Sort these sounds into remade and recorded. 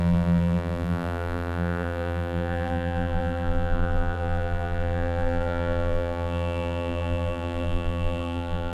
remade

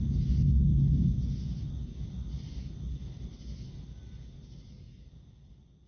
recorded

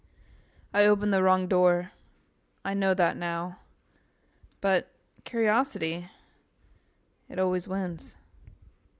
recorded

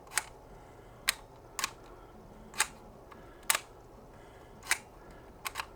recorded